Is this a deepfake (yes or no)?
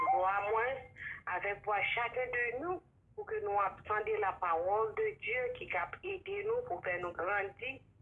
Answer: no